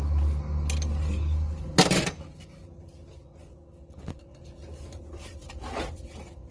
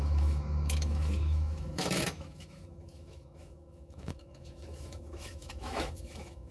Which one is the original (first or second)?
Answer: first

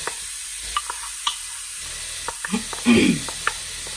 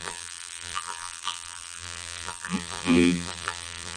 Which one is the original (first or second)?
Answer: first